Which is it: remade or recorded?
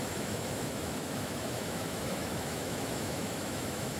remade